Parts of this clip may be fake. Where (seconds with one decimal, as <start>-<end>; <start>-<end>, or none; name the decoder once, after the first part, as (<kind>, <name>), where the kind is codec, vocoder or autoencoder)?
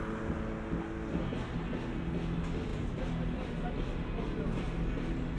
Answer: none